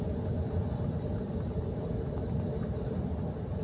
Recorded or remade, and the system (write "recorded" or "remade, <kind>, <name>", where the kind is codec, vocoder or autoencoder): recorded